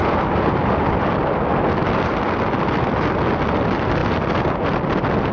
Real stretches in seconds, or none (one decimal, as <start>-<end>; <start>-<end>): 0.0-5.3